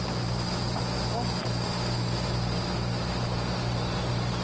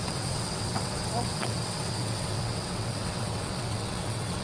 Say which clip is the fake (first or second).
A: second